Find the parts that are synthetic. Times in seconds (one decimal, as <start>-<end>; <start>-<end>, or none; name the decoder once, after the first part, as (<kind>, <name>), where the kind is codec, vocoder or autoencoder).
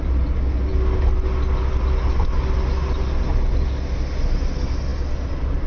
none